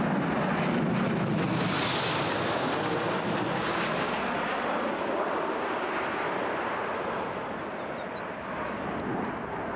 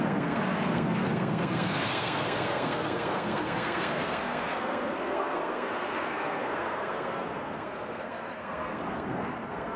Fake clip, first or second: second